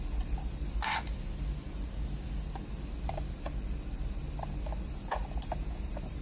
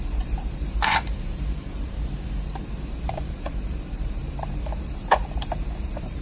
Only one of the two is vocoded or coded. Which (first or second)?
second